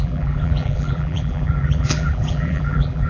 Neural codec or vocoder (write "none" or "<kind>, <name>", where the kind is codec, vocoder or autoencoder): vocoder, BigVGAN v2